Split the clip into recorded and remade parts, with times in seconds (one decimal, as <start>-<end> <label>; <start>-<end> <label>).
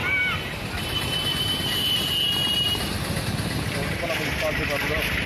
0.0-3.2 remade; 3.2-5.3 recorded